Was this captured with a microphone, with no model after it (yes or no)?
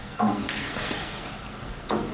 no